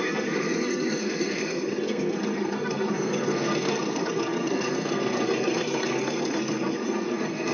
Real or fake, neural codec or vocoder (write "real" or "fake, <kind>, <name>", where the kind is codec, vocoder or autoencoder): fake, codec, SNAC